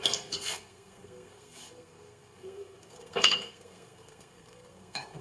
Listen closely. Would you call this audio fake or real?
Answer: fake